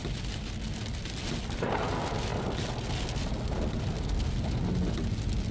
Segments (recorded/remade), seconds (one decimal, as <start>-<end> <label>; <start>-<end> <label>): 0.0-5.5 recorded